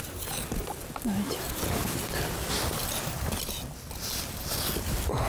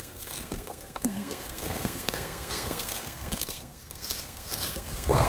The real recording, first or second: first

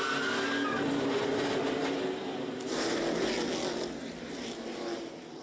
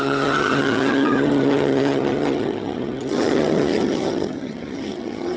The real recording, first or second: first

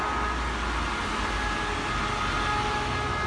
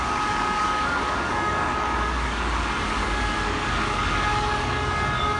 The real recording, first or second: first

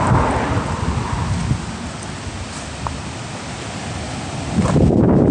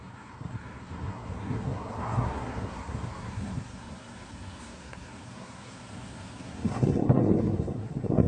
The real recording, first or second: first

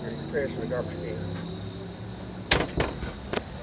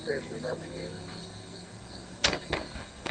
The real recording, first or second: first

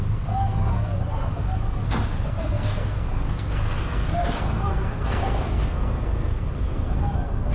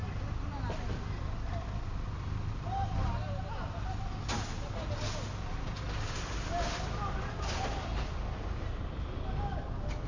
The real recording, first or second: second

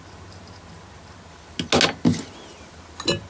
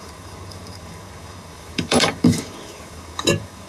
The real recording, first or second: first